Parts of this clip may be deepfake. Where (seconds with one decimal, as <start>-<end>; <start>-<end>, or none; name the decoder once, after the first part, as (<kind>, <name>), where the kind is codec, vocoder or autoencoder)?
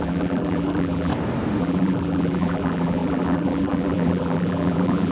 0.0-1.1 (vocoder, BigVGAN v2); 1.6-5.1